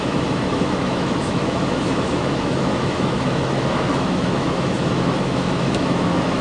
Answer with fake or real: fake